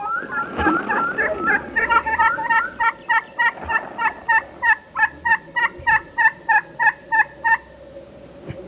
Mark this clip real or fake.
real